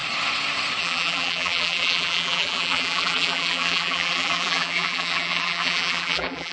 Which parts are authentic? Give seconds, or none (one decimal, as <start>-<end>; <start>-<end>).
0.0-0.8